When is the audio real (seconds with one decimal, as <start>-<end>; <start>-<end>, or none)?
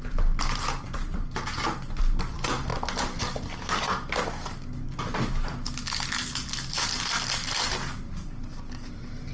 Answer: 0.0-9.3